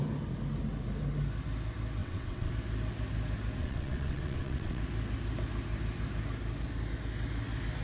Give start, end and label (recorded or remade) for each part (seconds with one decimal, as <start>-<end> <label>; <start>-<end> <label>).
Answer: 0.0-2.0 recorded; 2.0-2.5 remade; 2.5-3.6 recorded; 3.6-4.8 remade; 4.8-7.8 recorded